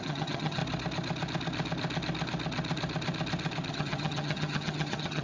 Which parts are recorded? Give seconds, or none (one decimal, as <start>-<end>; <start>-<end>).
0.6-3.7